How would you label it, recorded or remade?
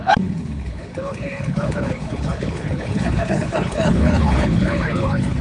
remade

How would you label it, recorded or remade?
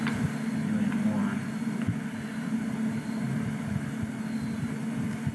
recorded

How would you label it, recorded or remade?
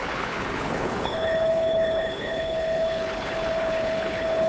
remade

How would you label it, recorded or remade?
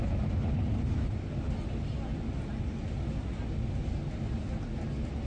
recorded